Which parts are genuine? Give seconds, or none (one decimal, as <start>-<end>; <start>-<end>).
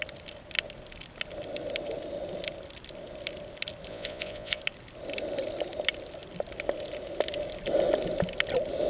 0.0-3.9; 4.6-8.9